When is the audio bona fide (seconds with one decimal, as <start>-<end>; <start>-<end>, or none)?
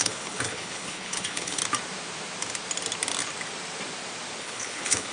1.6-4.4